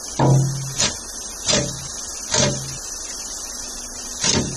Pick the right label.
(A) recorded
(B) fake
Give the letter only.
A